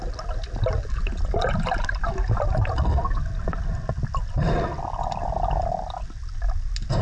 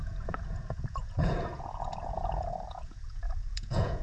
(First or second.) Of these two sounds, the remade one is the second